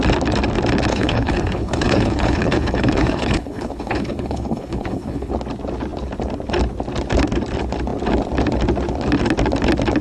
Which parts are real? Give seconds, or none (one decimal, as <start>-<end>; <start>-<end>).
0.0-0.9; 5.3-10.0